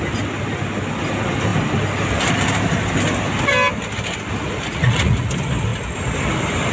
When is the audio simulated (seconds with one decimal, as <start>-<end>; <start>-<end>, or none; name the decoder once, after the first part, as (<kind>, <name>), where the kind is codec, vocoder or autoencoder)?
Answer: 4.7-5.3 (vocoder, Vocos)